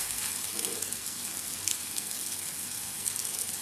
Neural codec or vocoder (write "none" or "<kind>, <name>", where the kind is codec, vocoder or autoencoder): codec, SNAC